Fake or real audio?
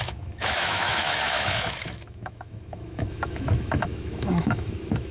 fake